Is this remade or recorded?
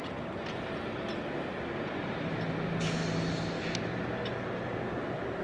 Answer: recorded